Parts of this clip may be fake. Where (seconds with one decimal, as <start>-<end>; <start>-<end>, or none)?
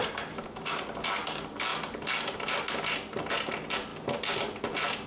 none